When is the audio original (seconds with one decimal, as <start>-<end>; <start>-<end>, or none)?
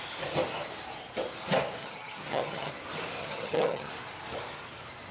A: 0.0-1.8; 2.7-3.2; 3.9-5.1